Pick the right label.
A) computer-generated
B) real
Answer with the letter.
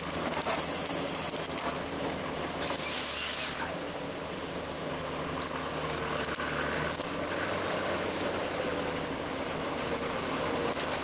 B